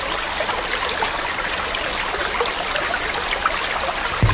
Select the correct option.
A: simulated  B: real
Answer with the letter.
B